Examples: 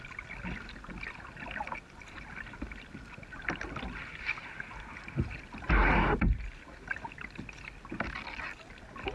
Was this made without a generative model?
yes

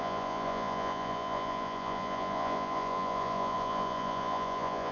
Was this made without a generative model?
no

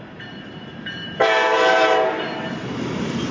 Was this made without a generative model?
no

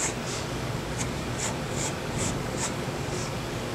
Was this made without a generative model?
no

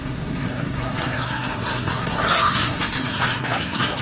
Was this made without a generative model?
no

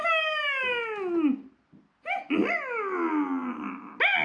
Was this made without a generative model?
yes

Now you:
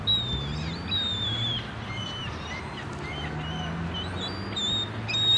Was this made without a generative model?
yes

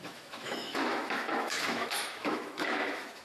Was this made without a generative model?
no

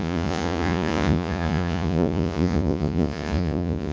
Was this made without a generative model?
no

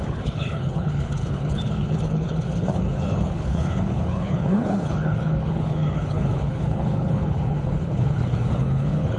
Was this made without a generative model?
no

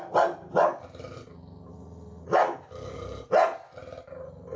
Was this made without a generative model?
yes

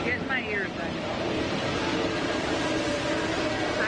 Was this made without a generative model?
yes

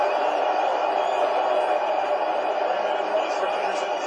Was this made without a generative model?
yes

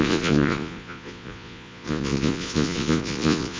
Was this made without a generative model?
no